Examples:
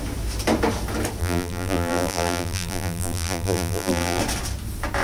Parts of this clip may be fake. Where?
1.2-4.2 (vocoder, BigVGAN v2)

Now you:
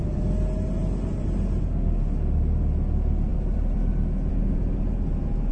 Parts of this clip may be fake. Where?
3.3-4.3 (vocoder, BigVGAN v2)

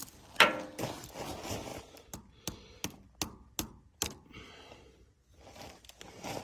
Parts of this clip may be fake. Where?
none